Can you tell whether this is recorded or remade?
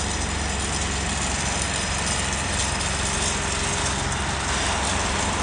recorded